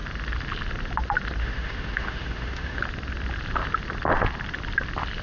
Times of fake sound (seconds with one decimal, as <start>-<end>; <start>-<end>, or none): 1.4-2.8